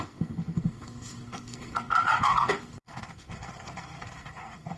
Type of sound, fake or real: fake